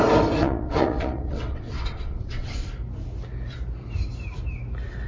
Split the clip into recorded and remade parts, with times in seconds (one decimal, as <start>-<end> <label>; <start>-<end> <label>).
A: 0.0-0.4 recorded; 0.4-2.7 remade; 2.7-5.1 recorded